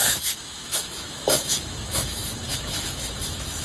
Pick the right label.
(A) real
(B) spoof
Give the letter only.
B